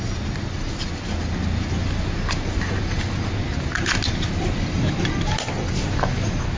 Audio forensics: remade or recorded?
recorded